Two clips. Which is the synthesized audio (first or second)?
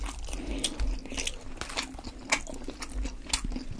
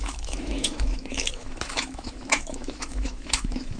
second